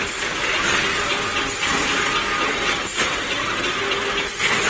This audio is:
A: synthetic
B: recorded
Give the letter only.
B